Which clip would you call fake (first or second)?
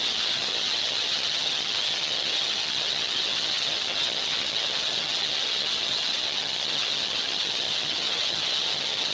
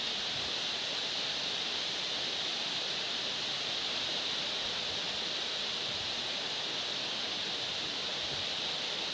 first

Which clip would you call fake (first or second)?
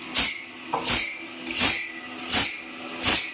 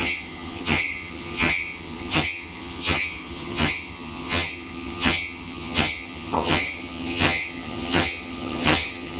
second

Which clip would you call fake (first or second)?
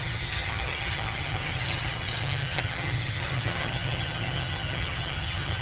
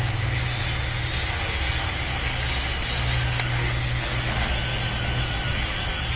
first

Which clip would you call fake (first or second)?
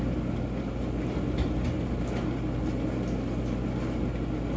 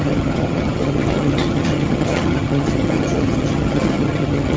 second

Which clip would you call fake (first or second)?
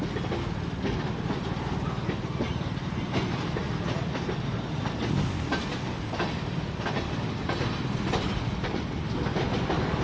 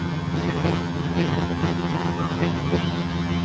second